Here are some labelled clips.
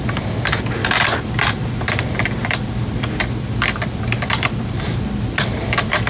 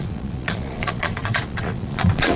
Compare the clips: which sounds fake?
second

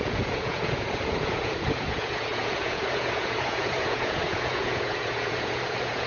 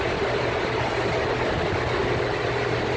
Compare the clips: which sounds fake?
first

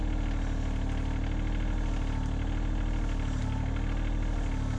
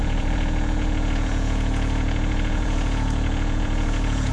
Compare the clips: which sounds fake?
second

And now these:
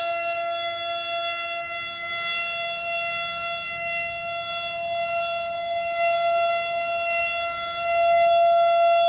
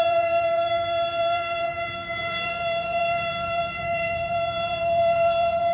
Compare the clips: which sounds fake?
second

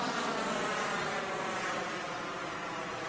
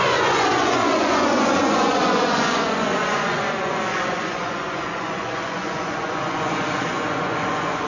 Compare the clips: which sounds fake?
second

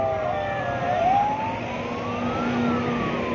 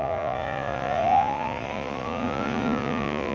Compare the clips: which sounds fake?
second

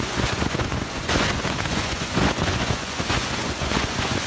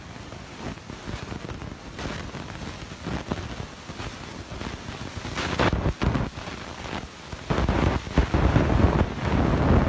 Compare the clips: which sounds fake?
first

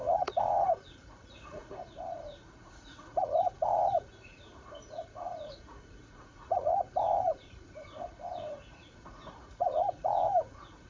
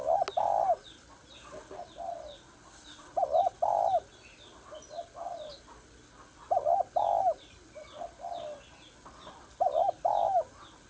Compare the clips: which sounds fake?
first